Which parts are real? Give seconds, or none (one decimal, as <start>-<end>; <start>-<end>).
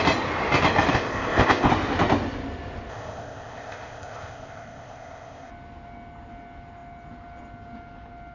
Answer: 0.0-0.9; 1.7-2.9; 5.5-8.3